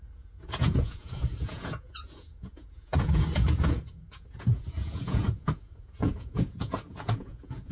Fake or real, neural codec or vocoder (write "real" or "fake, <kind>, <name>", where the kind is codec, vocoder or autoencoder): fake, vocoder, Vocos